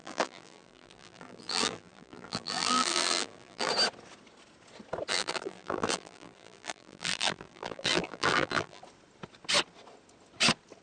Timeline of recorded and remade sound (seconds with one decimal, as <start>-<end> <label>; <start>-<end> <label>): 0.0-3.7 remade; 3.7-5.1 recorded; 5.1-8.8 remade; 8.8-10.8 recorded